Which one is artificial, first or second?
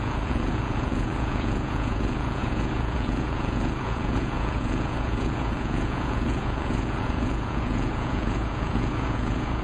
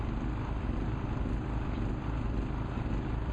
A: first